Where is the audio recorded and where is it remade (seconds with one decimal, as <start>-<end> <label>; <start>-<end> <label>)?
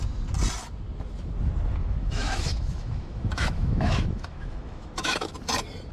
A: 0.0-1.8 recorded; 1.8-5.3 remade; 5.3-5.9 recorded